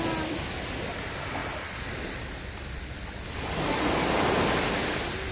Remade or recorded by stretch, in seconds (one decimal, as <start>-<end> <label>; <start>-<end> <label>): 0.0-5.3 recorded